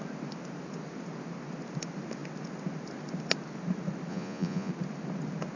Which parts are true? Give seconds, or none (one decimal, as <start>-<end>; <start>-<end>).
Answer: 0.0-4.1; 4.7-5.6